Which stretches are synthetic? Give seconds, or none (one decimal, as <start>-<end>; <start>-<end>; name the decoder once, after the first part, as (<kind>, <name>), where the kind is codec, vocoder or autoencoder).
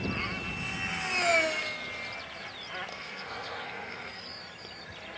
2.9-4.2 (codec, SNAC)